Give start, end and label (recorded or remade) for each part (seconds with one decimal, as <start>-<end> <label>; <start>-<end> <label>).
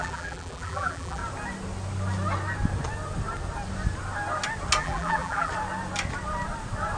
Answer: 0.0-1.2 remade; 1.2-4.8 recorded; 4.8-5.5 remade; 5.5-7.0 recorded